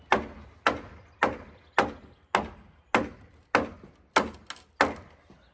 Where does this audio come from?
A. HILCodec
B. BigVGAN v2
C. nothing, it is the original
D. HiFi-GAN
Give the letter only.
C